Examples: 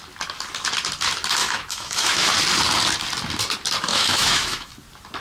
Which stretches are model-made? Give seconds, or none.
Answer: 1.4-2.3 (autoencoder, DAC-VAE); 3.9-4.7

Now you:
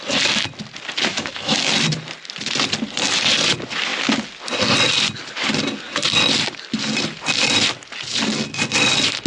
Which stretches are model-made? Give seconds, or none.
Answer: 1.1-1.7 (autoencoder, DAC-VAE)

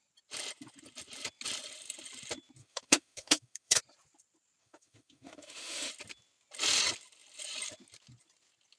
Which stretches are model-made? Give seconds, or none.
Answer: 2.6-3.8 (autoencoder, DAC-VAE); 4.6-5.9

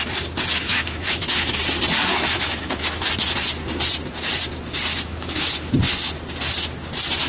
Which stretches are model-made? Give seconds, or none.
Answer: 0.7-1.6 (autoencoder, DAC-VAE); 2.1-3.1; 4.9-5.7